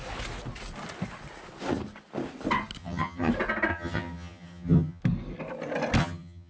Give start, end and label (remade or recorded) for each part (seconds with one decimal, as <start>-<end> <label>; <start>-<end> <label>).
0.0-2.8 recorded; 2.8-3.3 remade; 3.3-3.7 recorded; 3.7-5.0 remade; 5.0-6.0 recorded; 6.0-6.5 remade

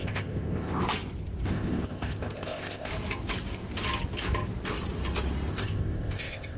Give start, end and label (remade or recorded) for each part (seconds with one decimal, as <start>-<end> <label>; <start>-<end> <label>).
0.0-0.8 remade; 0.8-1.5 recorded; 1.5-2.9 remade; 2.9-5.5 recorded; 5.5-6.6 remade